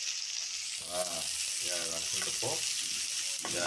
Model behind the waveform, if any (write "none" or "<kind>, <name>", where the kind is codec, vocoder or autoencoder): none